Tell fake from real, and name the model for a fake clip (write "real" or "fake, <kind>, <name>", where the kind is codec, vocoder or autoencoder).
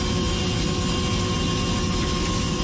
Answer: real